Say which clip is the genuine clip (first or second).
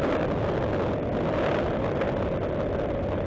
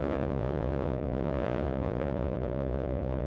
first